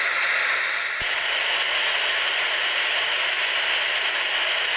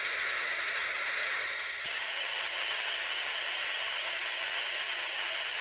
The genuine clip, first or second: first